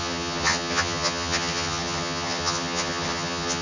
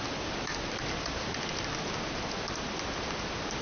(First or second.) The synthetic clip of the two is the first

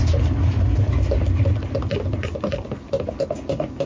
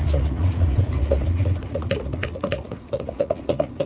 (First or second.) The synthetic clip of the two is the second